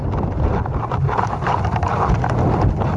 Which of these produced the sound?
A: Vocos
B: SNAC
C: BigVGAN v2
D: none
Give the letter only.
D